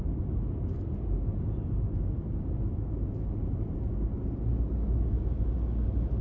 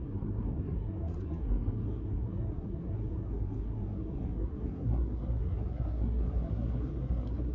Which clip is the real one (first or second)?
first